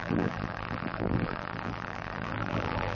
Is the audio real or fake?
fake